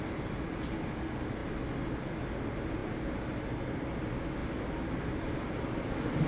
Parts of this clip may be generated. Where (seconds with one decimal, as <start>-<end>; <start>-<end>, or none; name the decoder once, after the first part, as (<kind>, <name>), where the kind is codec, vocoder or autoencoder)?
none

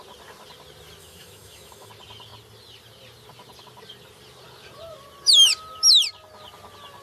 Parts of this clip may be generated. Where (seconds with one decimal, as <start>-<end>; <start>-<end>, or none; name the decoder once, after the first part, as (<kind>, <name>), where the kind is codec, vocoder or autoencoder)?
1.0-1.9 (autoencoder, DAC-VAE)

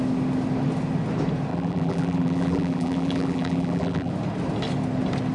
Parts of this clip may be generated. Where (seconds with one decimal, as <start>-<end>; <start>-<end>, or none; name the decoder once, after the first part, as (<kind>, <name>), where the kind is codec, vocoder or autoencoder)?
1.5-4.1 (vocoder, BigVGAN v2)

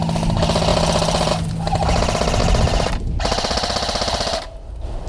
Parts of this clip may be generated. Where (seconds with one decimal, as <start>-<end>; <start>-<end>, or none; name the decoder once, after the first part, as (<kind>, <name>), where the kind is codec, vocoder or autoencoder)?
none